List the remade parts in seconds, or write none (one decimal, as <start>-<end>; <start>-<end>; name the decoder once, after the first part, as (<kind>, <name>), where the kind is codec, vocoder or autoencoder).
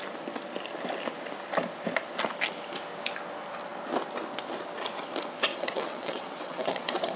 5.5-7.2 (vocoder, WaveNeXt)